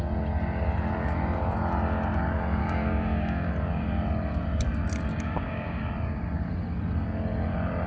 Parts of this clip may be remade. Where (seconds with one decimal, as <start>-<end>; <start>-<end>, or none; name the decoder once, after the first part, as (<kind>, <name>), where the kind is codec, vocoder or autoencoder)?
2.6-3.5 (codec, DAC); 5.1-5.8